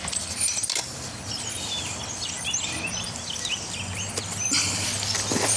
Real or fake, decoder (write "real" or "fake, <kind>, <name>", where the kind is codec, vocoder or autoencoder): real